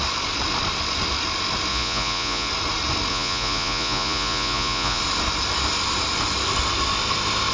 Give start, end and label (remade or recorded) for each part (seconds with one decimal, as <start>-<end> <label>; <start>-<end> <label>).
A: 0.0-1.7 recorded; 1.7-2.5 remade; 2.5-3.1 recorded; 3.1-5.0 remade; 5.0-7.5 recorded